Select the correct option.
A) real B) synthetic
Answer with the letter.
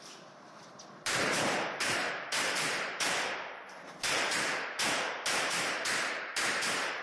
B